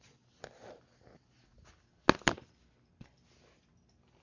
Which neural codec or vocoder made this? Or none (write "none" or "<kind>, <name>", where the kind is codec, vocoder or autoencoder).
none